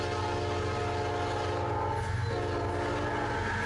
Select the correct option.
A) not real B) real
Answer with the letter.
B